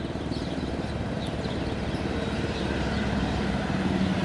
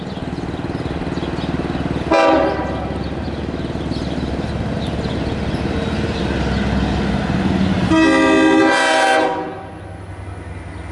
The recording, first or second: second